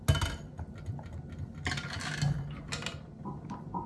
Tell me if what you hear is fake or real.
real